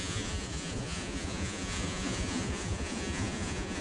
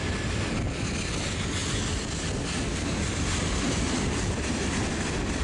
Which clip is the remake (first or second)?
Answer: first